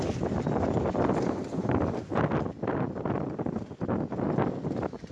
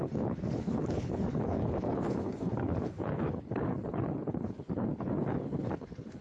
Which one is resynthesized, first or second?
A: second